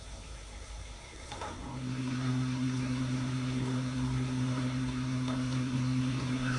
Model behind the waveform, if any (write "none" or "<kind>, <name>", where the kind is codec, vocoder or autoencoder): codec, SNAC